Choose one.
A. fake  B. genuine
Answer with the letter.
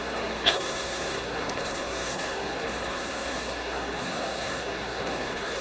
A